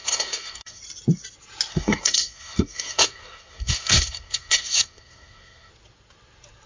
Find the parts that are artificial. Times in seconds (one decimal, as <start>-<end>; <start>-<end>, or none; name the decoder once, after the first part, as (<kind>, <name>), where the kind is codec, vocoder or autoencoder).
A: 0.0-0.8 (codec, SNAC); 1.7-5.7